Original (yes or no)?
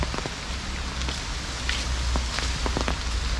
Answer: yes